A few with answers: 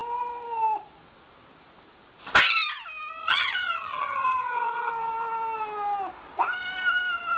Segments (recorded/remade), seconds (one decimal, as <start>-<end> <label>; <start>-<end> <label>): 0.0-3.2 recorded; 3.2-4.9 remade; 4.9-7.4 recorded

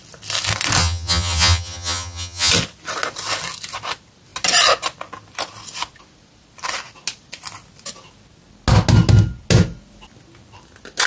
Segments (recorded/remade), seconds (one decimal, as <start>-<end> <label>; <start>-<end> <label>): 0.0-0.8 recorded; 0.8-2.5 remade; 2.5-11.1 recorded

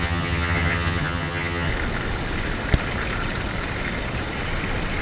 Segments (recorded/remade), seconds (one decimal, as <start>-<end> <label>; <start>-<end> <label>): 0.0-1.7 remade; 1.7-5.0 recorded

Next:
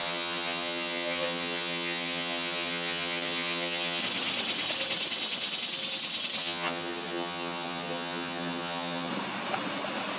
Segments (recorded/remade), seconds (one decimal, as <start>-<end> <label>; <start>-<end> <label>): 0.0-4.0 remade; 4.0-6.4 recorded; 6.4-9.1 remade; 9.1-10.2 recorded